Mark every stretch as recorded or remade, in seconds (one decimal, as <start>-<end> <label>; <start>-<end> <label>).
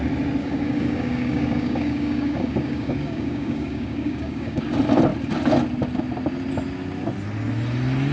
0.0-0.4 recorded; 0.4-4.6 remade; 4.6-8.1 recorded